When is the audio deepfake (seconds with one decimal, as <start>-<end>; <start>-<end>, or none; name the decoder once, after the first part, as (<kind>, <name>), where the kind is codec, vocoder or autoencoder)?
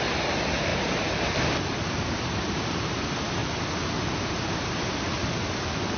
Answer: 0.7-2.9 (vocoder, BigVGAN v2); 3.4-4.8